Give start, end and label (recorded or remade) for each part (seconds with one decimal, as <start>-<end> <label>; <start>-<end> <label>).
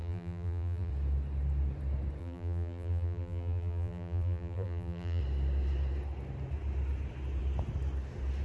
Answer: 0.0-0.9 remade; 0.9-2.2 recorded; 2.2-5.2 remade; 5.2-8.4 recorded